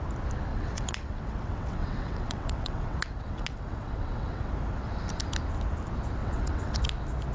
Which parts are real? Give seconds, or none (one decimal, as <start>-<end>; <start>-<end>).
0.0-0.5; 4.5-6.2; 6.8-7.3